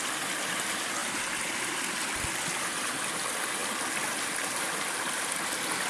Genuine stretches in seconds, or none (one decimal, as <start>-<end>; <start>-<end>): 0.0-5.9